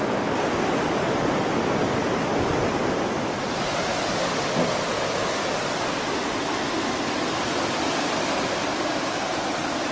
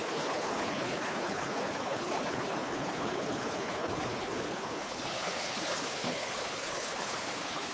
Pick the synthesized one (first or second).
second